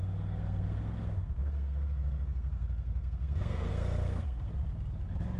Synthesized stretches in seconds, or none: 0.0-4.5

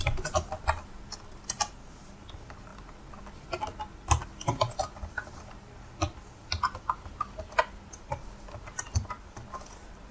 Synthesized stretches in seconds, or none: none

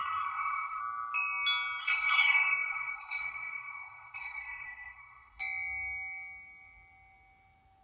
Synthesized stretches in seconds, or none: 0.0-0.8; 1.8-5.4

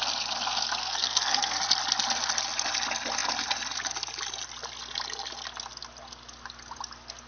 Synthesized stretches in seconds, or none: 0.8-1.6

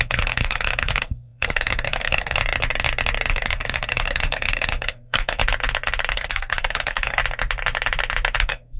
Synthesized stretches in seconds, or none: 0.0-2.4; 3.3-5.4; 6.1-7.2; 8.4-8.8

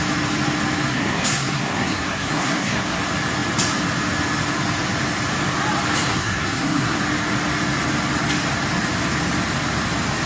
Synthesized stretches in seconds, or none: 0.9-3.0; 6.1-7.0

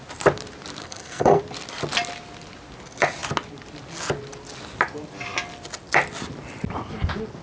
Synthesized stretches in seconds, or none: 0.8-1.4